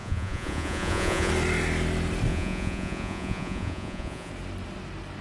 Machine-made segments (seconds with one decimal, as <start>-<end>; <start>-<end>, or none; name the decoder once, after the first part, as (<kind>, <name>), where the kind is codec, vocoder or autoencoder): 0.0-1.3 (vocoder, Vocos); 2.3-4.3